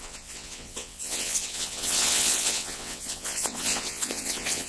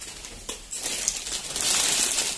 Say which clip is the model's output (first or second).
first